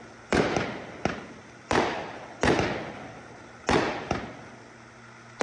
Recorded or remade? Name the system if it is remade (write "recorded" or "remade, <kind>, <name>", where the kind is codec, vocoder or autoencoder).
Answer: recorded